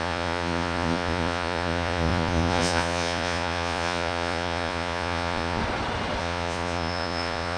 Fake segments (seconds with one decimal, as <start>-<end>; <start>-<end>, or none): 0.0-5.6; 6.2-7.6